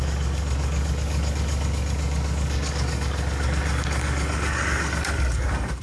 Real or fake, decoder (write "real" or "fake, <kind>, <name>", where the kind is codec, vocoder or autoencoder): fake, codec, DAC